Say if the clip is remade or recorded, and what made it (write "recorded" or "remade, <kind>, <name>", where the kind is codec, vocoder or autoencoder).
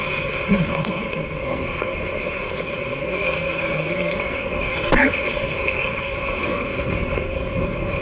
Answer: remade, codec, SNAC